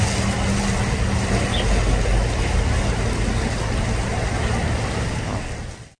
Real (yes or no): yes